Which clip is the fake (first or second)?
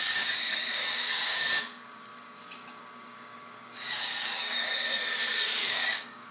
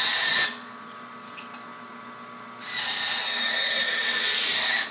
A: first